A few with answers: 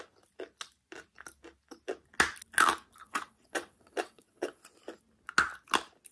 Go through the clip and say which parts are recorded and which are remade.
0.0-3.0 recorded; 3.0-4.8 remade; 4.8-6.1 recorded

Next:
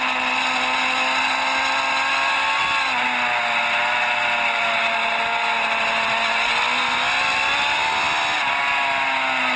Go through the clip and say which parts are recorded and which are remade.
0.0-9.6 recorded

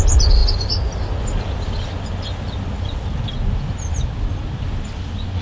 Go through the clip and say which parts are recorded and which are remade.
0.0-5.4 recorded

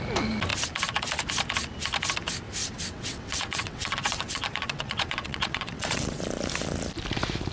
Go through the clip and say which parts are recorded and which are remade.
0.0-2.6 recorded; 2.6-6.2 remade; 6.2-7.5 recorded

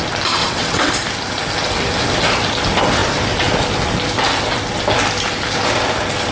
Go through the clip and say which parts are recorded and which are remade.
0.0-0.4 recorded; 0.4-0.9 remade; 0.9-6.3 recorded

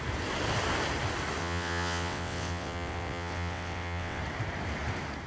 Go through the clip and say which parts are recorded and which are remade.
0.0-1.4 recorded; 1.4-4.2 remade; 4.2-5.3 recorded